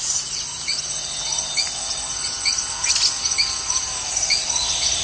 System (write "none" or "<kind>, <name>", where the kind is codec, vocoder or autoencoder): none